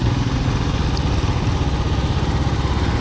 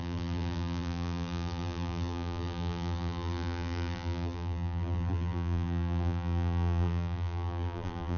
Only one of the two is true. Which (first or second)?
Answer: first